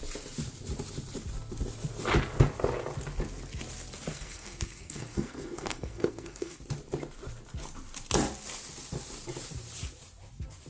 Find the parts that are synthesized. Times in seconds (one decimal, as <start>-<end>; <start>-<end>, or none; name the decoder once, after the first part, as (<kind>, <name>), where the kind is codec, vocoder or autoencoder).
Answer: 4.1-6.6 (codec, SNAC)

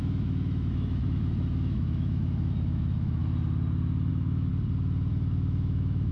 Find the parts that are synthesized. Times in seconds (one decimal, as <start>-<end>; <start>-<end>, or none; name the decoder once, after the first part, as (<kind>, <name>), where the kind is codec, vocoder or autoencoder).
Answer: 0.0-3.2 (autoencoder, DAC-VAE); 4.1-4.5; 5.1-6.1

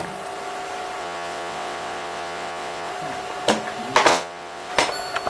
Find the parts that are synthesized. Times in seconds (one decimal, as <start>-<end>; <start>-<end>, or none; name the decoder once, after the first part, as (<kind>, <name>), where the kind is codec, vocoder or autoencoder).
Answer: 1.0-2.9 (vocoder, WaveNeXt); 4.1-4.7

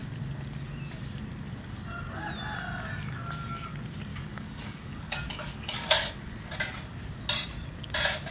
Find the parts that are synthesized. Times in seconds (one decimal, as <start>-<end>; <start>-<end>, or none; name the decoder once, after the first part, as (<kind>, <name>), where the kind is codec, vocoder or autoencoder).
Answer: 4.1-6.1 (codec, DAC)

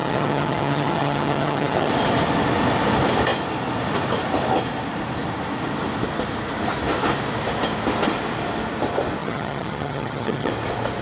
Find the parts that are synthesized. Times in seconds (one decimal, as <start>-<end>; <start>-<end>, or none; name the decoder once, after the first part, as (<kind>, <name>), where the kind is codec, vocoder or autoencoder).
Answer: 0.0-1.9 (vocoder, HiFi-GAN); 9.2-10.5